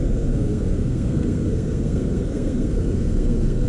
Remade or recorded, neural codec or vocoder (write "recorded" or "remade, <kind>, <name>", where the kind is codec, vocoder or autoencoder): remade, codec, SNAC